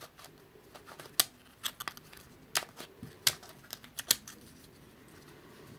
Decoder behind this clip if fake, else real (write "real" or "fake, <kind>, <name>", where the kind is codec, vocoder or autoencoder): real